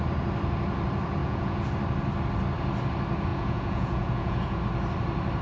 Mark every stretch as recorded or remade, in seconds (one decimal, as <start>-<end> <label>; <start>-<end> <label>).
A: 0.0-1.2 recorded; 1.2-1.7 remade; 1.7-3.3 recorded; 3.3-4.6 remade; 4.6-5.4 recorded